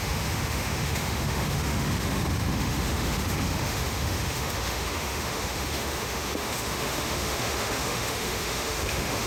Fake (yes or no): yes